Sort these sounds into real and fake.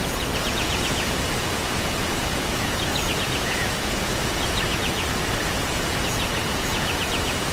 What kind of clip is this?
fake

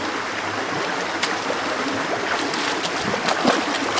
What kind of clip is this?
real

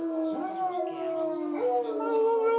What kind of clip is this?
real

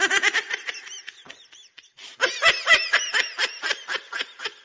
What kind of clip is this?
fake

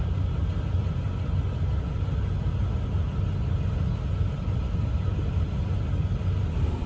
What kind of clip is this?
real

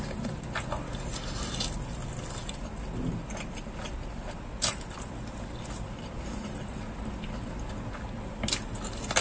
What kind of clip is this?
real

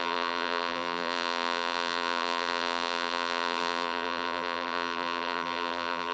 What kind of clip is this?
fake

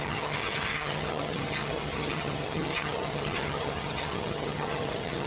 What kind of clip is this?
fake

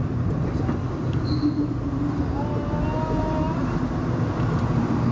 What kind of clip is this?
real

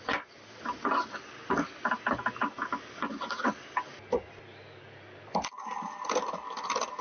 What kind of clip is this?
real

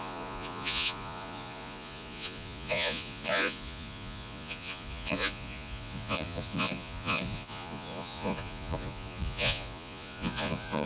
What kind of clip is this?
fake